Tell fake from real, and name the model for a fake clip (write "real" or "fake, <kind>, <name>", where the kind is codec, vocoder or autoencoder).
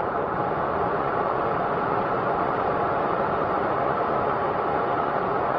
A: fake, vocoder, Vocos